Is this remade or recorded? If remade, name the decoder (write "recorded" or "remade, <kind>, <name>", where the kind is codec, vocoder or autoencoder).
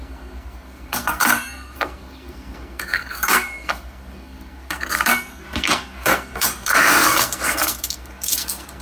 remade, codec, SNAC